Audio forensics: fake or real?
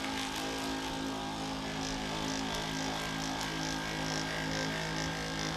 real